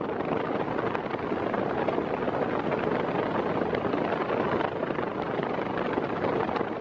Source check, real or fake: real